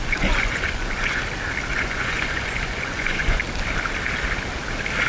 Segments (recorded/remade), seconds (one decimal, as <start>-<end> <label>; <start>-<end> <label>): 0.0-1.2 remade; 1.2-1.7 recorded; 1.7-3.4 remade; 3.4-5.1 recorded